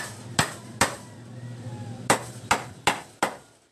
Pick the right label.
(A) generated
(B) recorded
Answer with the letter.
B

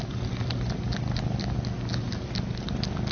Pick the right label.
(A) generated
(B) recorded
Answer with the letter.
B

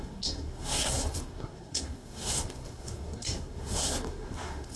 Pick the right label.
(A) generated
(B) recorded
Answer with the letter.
A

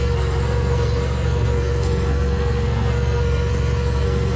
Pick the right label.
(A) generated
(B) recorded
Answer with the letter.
A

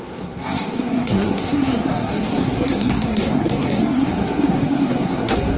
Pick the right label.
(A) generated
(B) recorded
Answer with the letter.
A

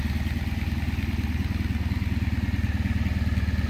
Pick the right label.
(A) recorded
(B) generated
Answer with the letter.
A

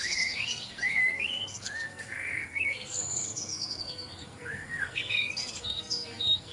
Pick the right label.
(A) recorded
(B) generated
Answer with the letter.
B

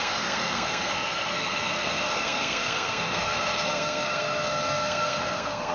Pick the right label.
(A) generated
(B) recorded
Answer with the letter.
A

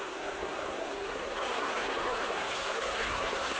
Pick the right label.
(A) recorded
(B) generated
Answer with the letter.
B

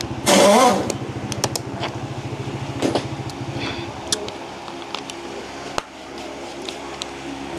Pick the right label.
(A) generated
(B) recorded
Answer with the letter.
B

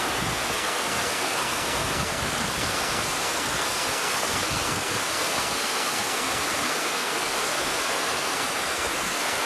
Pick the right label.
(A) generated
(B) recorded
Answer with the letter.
A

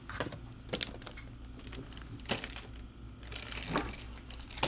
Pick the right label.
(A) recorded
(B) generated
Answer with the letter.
A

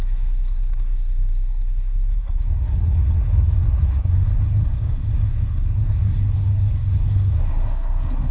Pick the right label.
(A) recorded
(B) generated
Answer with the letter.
B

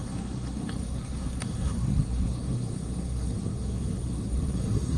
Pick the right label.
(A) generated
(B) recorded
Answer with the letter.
A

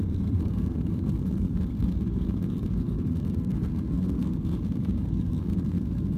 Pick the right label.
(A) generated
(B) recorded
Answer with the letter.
A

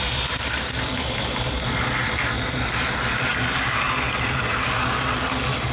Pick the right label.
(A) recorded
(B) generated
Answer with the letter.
A